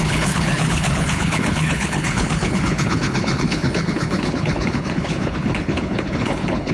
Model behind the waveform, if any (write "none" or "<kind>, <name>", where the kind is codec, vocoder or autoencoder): codec, HILCodec